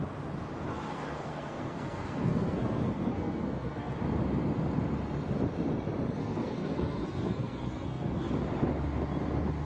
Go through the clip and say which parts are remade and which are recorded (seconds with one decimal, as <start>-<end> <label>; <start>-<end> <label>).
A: 0.0-0.7 recorded; 0.7-4.0 remade; 4.0-6.2 recorded; 6.2-8.3 remade; 8.3-9.6 recorded

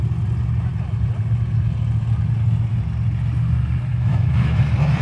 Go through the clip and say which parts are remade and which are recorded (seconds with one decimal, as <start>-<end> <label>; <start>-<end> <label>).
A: 0.0-3.9 recorded; 3.9-4.6 remade; 4.6-5.0 recorded